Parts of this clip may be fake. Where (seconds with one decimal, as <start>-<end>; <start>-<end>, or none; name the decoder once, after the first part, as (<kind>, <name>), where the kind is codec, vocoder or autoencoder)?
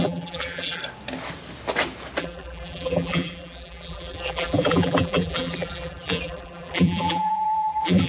0.0-0.8 (vocoder, BigVGAN v2); 2.2-8.1